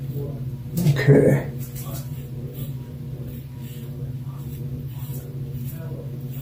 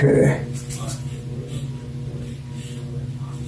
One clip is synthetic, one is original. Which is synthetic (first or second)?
first